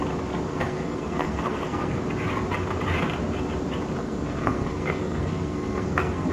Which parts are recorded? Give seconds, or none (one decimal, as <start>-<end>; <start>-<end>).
0.0-0.5; 2.0-4.0